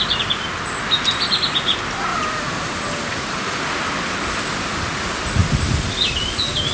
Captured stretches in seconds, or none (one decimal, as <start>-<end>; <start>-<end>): 0.0-2.1; 3.6-6.7